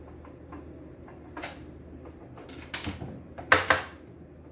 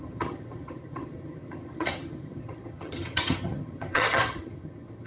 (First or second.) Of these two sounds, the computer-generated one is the second